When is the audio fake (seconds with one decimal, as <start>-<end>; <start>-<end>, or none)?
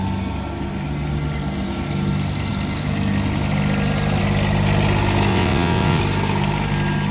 5.3-6.0